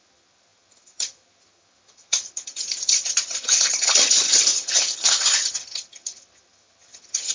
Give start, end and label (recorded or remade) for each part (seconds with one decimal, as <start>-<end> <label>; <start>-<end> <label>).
0.0-7.3 remade